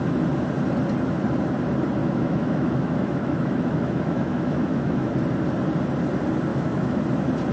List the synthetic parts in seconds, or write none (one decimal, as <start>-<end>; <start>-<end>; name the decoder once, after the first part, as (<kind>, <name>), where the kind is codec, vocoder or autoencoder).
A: 2.0-5.1 (autoencoder, DAC-VAE); 6.5-7.0